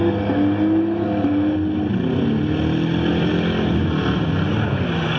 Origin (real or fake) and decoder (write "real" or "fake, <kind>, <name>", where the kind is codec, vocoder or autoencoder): real